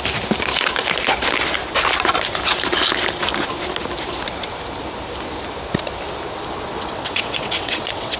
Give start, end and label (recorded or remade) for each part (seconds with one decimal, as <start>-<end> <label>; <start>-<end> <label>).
0.0-6.7 recorded; 6.7-8.2 remade